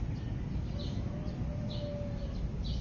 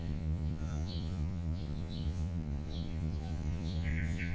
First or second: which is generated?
second